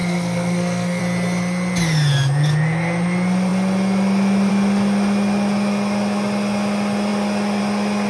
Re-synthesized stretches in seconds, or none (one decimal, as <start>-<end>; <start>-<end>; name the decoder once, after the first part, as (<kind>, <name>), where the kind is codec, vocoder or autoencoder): 0.0-1.0 (codec, SNAC)